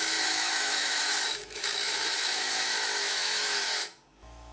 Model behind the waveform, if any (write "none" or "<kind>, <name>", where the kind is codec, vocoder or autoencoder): autoencoder, DAC-VAE